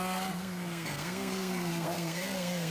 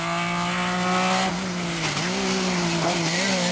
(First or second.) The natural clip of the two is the second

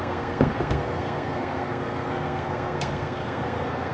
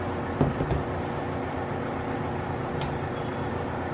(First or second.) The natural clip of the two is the second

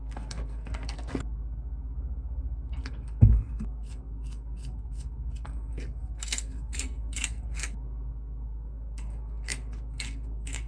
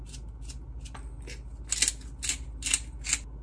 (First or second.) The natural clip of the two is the second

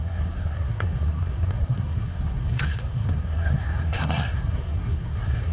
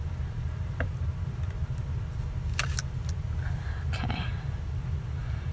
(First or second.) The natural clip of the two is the second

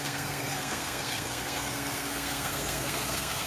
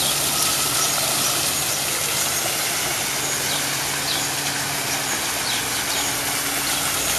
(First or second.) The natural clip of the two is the second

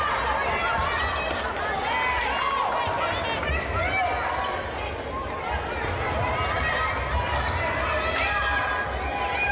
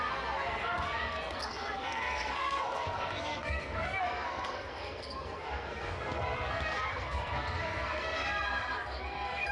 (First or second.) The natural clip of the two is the first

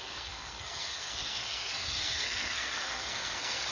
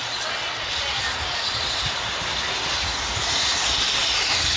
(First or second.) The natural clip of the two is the second